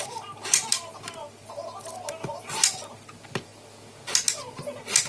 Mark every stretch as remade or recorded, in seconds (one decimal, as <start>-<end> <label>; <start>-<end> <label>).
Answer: 0.0-5.1 recorded